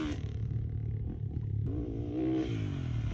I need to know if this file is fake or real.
real